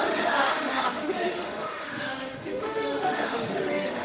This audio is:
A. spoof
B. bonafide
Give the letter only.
A